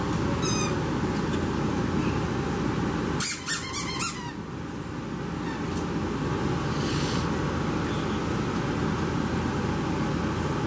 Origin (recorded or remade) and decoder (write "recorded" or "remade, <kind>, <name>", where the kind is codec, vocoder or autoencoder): recorded